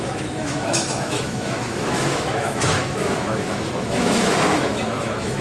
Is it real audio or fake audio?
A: fake